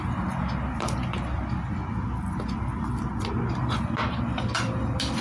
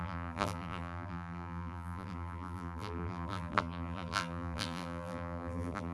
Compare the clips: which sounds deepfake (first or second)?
second